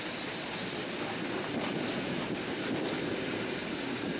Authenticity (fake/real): real